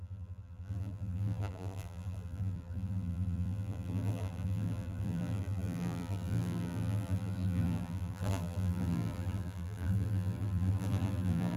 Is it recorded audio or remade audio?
remade